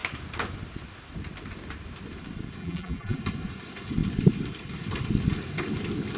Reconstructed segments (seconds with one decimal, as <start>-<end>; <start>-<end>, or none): 2.6-3.2